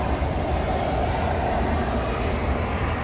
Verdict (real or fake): real